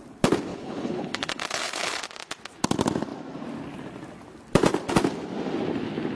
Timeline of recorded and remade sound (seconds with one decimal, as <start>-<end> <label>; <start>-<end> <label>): 0.0-0.5 recorded; 0.5-2.0 remade; 2.0-6.2 recorded